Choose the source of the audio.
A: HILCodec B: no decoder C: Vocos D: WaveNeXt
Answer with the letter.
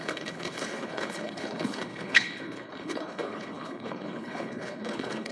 A